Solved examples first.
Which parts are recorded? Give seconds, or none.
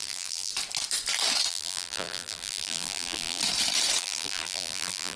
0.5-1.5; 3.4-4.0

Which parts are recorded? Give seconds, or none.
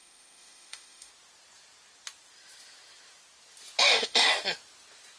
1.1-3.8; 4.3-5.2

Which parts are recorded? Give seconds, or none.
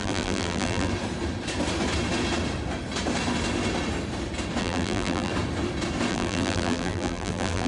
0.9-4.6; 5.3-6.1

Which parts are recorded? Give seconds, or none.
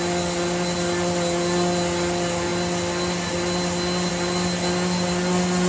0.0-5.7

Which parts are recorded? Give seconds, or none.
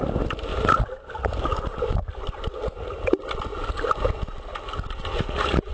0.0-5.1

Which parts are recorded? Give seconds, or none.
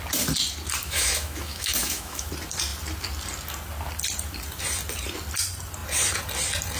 0.0-0.8; 2.3-6.8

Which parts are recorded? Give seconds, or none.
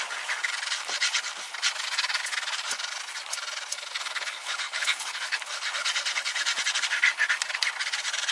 0.0-4.0; 5.2-8.3